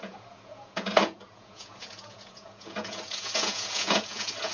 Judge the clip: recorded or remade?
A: remade